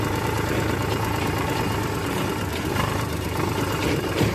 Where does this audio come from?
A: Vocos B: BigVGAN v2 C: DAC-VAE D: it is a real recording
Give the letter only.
B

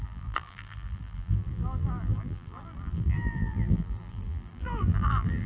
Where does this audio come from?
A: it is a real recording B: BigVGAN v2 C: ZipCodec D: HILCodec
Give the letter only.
B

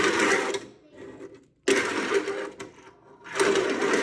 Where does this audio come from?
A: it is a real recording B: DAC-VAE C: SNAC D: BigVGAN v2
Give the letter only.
A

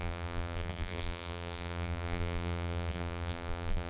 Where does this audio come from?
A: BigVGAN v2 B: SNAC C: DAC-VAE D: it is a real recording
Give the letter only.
A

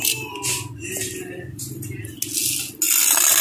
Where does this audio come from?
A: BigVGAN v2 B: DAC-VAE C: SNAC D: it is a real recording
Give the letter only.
D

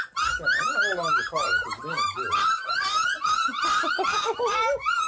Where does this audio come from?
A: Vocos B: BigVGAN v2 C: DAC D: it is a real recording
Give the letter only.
D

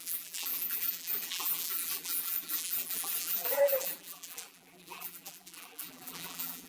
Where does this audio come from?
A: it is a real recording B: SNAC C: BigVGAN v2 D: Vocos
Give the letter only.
C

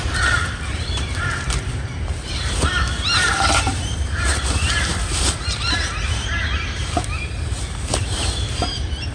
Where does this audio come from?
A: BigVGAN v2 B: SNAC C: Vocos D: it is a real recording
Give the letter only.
A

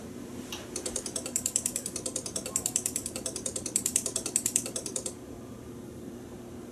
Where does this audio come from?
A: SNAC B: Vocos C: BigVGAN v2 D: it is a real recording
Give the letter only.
C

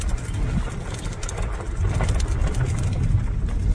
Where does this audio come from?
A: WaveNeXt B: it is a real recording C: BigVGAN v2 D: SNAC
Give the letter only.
B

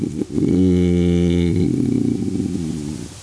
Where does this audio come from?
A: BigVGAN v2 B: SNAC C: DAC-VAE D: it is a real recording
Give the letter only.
A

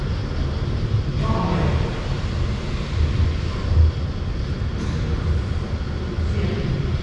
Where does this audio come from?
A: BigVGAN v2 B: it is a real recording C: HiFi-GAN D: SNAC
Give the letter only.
B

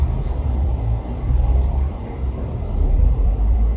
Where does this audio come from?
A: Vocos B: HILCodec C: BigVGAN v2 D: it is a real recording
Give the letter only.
C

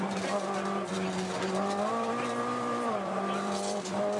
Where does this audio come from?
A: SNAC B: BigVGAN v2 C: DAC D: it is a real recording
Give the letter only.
B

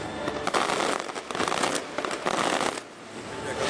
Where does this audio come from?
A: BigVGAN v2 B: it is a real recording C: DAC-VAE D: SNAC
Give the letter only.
B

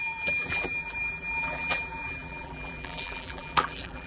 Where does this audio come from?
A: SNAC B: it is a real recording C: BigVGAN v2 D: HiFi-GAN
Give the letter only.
C